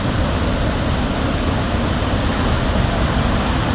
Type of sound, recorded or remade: recorded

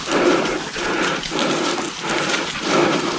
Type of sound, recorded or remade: recorded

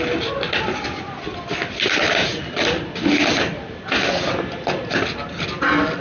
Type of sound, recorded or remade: recorded